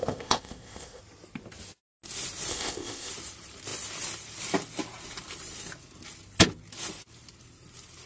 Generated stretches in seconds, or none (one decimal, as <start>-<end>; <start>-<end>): 0.0-1.0; 2.5-3.1